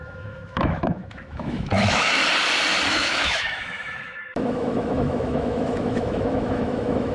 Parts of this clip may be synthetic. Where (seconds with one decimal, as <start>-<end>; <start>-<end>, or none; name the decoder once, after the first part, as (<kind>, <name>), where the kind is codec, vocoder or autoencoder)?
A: 0.0-2.2 (autoencoder, DAC-VAE); 2.9-7.1